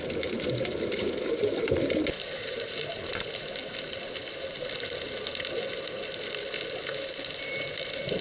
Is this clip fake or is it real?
real